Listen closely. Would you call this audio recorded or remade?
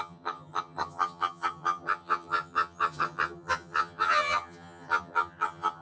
remade